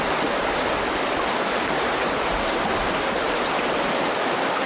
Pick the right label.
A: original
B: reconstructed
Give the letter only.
A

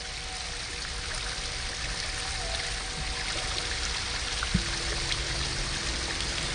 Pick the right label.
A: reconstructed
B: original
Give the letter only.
B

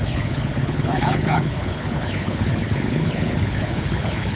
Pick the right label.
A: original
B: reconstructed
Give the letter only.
B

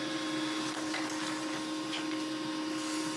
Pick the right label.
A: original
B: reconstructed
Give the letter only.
A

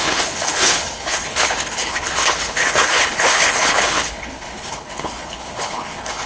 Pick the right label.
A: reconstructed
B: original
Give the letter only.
A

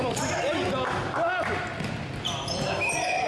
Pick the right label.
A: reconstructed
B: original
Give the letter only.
B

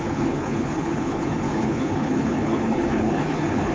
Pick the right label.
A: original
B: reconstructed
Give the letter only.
B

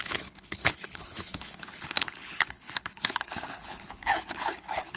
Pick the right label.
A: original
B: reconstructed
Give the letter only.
B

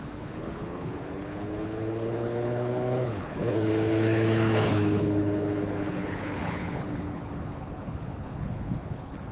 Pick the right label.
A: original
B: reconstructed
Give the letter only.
B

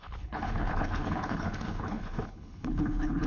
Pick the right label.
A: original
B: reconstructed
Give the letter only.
B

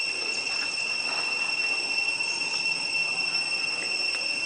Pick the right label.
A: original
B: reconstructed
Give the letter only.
A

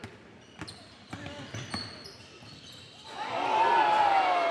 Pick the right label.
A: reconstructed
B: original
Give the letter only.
B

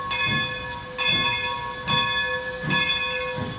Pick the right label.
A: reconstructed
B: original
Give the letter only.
B